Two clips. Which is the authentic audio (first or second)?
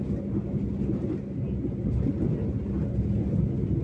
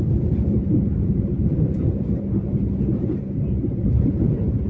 first